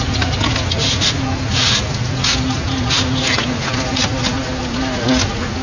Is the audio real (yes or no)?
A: yes